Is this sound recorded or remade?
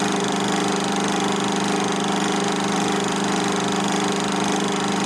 recorded